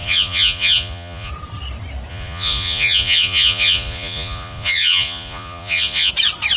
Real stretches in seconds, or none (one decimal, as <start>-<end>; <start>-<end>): 1.3-2.1; 6.1-6.6